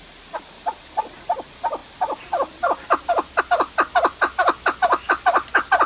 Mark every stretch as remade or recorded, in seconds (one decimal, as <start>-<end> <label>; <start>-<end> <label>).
0.0-5.9 recorded